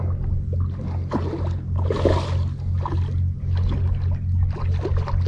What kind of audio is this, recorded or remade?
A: recorded